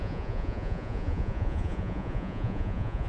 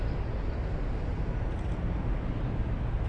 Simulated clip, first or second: first